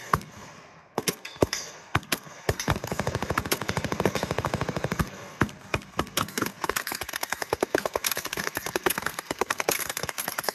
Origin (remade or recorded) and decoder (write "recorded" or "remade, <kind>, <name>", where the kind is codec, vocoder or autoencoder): remade, codec, SNAC